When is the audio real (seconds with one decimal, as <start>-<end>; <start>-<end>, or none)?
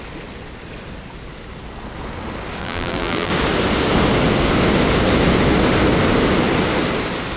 0.0-2.6; 3.3-7.4